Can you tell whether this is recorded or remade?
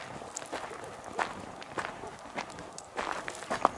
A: recorded